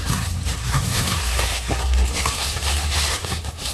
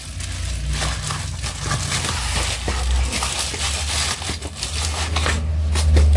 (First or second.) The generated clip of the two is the first